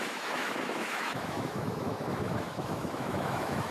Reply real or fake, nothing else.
fake